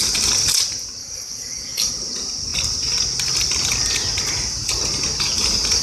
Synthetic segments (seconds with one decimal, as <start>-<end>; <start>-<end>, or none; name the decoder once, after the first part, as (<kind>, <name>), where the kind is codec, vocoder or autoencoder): 1.0-1.9 (codec, DAC)